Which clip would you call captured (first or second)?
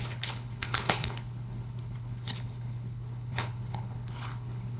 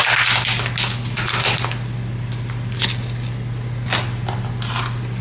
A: second